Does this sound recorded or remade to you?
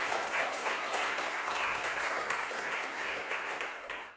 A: remade